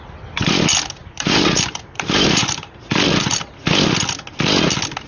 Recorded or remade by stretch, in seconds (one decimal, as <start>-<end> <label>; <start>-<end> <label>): 0.0-1.0 recorded; 1.0-3.4 remade; 3.4-5.1 recorded